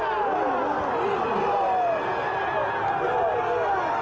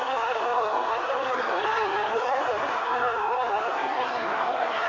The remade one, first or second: second